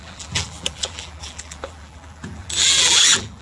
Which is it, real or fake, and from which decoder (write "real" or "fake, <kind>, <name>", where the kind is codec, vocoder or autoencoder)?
fake, vocoder, BigVGAN v2